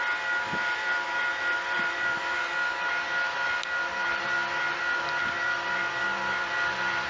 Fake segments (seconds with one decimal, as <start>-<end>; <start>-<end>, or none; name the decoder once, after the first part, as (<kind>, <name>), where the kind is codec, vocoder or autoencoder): 0.6-2.4 (vocoder, BigVGAN v2); 3.9-4.6; 5.2-6.0